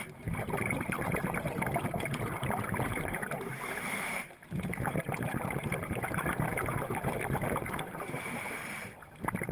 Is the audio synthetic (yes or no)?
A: yes